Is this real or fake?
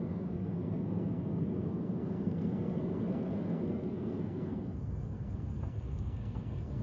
fake